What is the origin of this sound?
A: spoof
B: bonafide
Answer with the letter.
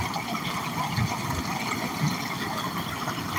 B